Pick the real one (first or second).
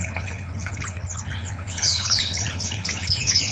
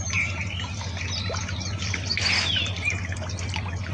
second